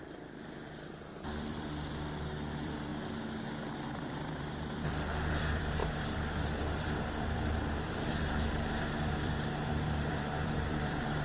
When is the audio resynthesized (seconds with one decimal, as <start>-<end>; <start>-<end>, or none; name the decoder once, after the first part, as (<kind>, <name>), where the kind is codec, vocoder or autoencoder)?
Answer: 0.0-2.9 (vocoder, BigVGAN v2); 3.7-11.2